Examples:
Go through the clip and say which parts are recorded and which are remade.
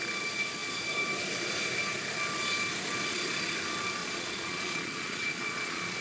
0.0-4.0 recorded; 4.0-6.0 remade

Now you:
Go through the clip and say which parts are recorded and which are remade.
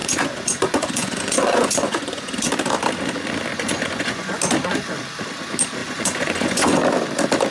0.0-2.5 remade; 2.5-3.5 recorded; 3.5-4.4 remade; 4.4-5.8 recorded; 5.8-6.8 remade; 6.8-7.5 recorded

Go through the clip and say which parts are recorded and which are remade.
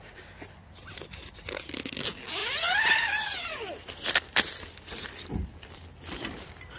0.0-6.8 recorded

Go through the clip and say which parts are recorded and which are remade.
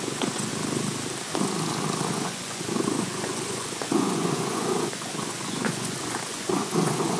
0.0-0.5 remade; 0.5-2.1 recorded; 2.1-7.2 remade